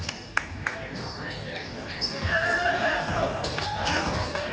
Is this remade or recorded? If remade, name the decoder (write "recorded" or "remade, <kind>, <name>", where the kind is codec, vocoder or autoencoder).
remade, codec, DAC